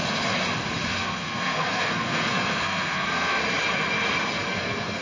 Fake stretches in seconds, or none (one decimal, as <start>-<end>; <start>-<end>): 0.9-3.4; 4.5-5.0